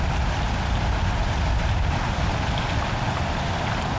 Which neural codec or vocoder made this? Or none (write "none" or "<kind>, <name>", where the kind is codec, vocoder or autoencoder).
none